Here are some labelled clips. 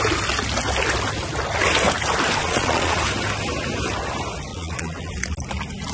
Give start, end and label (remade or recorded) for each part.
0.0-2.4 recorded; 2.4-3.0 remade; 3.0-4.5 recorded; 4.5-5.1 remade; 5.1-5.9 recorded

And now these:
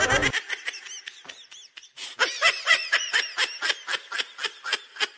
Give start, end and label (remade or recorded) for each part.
0.0-2.3 recorded; 2.3-3.2 remade; 3.2-5.2 recorded

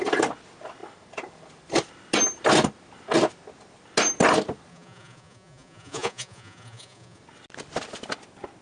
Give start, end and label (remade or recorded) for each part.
0.0-4.7 recorded; 4.7-7.2 remade; 7.2-8.6 recorded

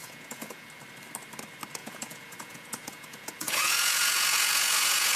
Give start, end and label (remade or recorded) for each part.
0.0-0.7 remade; 0.7-1.8 recorded; 1.8-5.2 remade

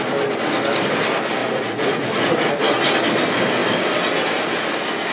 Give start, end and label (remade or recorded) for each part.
0.0-1.4 recorded; 1.4-2.5 remade; 2.5-5.1 recorded

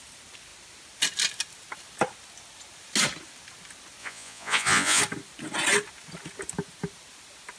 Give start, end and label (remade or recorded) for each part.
0.0-4.0 recorded; 4.0-5.0 remade; 5.0-7.6 recorded

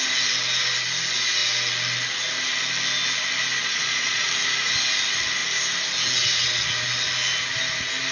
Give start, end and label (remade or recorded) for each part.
0.0-3.6 recorded; 3.6-4.3 remade; 4.3-8.1 recorded

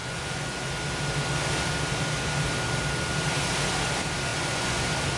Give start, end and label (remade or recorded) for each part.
0.0-0.7 remade; 0.7-4.3 recorded; 4.3-4.8 remade; 4.8-5.2 recorded